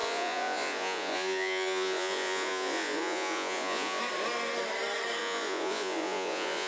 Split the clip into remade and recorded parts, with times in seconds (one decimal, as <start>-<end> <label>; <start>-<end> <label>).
0.0-4.0 remade; 4.0-5.2 recorded; 5.2-6.7 remade